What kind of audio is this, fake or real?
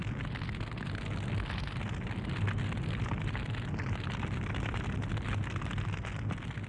real